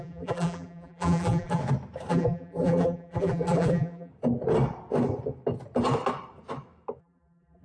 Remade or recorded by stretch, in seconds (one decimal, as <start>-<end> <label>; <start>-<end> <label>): 0.0-1.6 remade; 1.6-2.1 recorded; 2.1-4.1 remade; 4.1-7.0 recorded; 7.0-7.6 remade